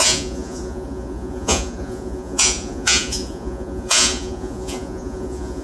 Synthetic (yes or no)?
yes